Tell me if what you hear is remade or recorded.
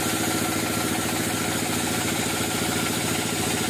recorded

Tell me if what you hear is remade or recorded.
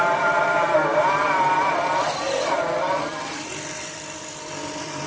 remade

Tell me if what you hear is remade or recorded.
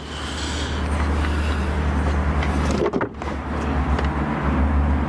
recorded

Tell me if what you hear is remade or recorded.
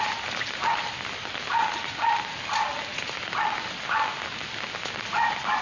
recorded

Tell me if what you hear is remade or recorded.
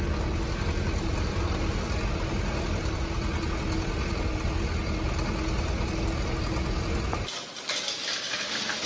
recorded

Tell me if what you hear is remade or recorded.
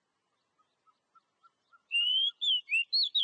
recorded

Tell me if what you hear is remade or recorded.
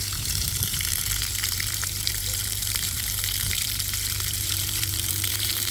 remade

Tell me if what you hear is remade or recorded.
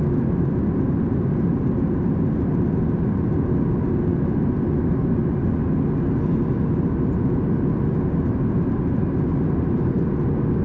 recorded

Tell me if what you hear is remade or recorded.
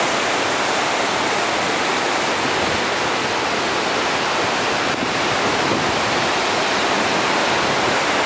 recorded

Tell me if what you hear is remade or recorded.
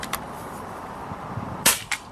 remade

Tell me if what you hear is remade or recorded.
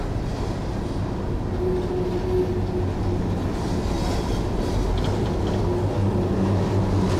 recorded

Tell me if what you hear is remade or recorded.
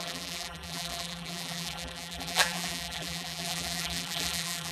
remade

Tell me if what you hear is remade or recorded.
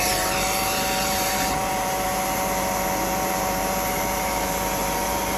remade